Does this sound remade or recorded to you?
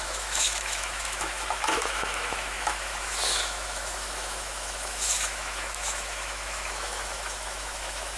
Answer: remade